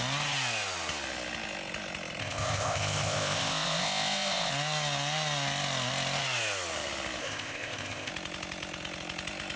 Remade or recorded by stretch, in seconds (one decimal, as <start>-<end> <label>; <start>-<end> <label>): 0.0-2.2 recorded; 2.2-4.5 remade; 4.5-7.2 recorded; 7.2-8.1 remade; 8.1-9.6 recorded